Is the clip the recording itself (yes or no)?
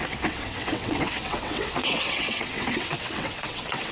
no